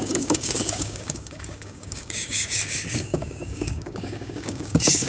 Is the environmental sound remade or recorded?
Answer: remade